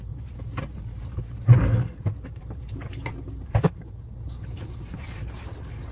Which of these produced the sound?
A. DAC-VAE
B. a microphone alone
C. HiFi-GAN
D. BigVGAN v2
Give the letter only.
D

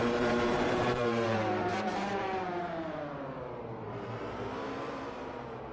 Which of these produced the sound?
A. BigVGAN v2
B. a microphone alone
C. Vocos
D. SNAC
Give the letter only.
A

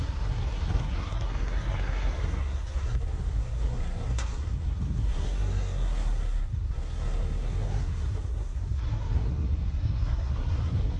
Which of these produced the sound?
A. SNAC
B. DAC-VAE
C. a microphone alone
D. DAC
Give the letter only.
A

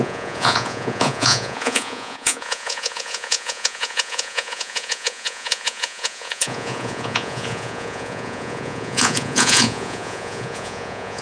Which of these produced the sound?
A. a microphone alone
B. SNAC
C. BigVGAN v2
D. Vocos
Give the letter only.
D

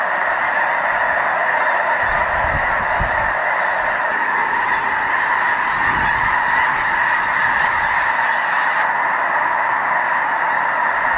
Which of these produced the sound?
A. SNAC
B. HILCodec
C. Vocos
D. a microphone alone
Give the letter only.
D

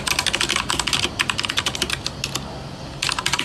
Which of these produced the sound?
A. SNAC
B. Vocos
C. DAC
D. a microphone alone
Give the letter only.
D